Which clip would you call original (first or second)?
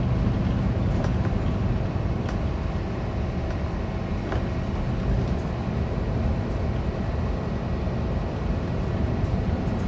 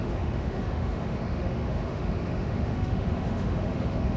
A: first